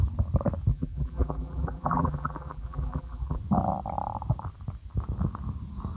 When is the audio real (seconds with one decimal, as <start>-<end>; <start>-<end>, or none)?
0.0-0.7; 3.4-6.0